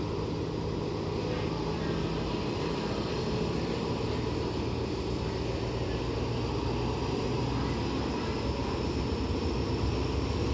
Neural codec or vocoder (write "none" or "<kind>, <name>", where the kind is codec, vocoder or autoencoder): none